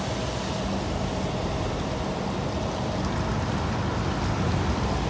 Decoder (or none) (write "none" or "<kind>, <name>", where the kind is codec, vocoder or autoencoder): none